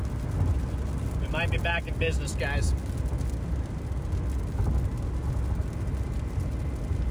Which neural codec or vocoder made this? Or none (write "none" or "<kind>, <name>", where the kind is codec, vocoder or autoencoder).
none